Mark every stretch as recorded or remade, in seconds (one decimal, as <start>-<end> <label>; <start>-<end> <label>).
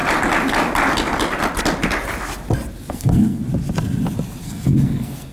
0.0-2.9 recorded; 2.9-3.4 remade; 3.4-4.4 recorded; 4.4-5.3 remade